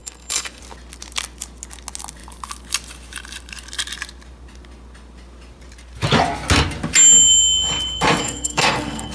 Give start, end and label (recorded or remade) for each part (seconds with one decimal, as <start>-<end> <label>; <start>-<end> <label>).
0.0-0.6 remade; 0.6-8.2 recorded; 8.2-9.1 remade